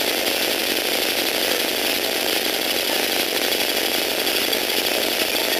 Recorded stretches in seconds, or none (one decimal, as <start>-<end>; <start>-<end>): 0.0-1.9; 3.4-5.6